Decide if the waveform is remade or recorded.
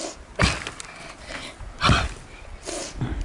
recorded